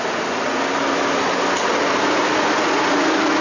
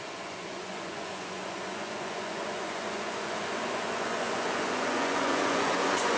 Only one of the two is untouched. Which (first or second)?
first